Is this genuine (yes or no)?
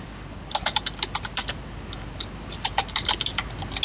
yes